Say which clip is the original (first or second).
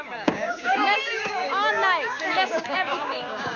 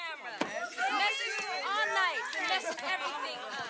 second